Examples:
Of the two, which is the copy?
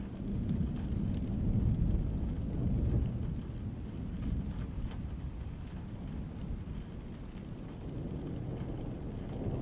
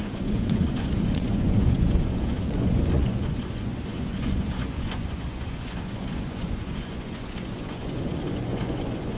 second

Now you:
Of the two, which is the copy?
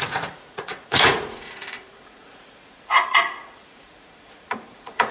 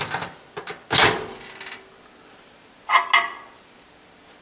first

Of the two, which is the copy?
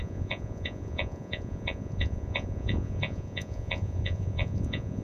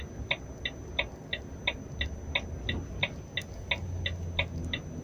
first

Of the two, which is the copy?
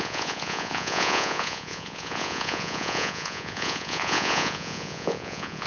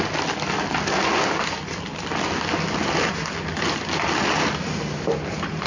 first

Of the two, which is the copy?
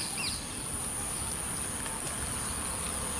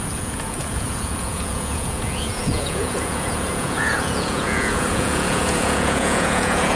second